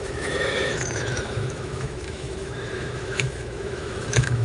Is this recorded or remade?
remade